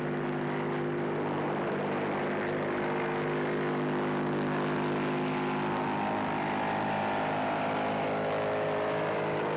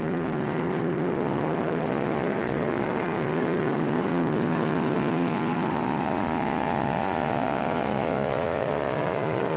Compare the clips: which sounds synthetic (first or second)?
second